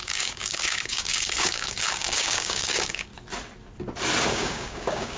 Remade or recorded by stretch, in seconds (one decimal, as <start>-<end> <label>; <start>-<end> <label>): 0.0-3.1 remade; 3.1-4.3 recorded; 4.3-5.2 remade